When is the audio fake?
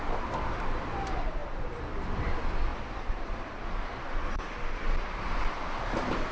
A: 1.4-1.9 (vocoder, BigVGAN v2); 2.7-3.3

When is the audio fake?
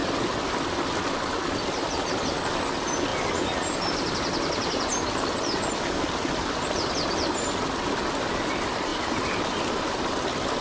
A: 3.1-6.9 (vocoder, BigVGAN v2); 8.9-9.4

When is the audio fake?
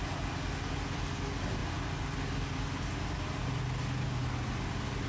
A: none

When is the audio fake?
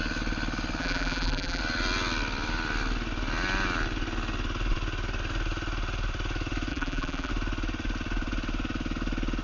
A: 0.8-1.6 (vocoder, BigVGAN v2); 6.7-7.3